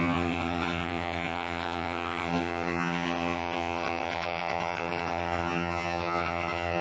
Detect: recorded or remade remade